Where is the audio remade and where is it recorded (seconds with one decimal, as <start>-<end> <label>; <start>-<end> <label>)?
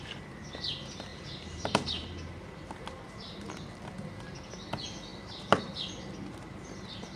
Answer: 0.0-1.1 recorded; 1.1-3.7 remade; 3.7-5.1 recorded; 5.1-7.2 remade